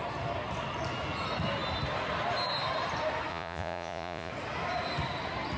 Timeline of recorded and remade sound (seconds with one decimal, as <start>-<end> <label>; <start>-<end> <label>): 0.0-3.3 recorded; 3.3-4.3 remade; 4.3-5.6 recorded